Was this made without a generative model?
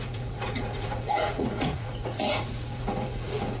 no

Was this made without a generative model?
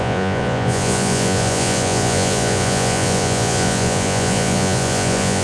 no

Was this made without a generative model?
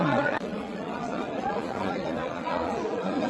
no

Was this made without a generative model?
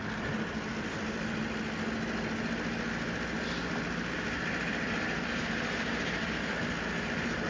yes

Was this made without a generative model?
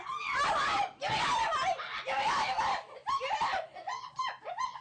yes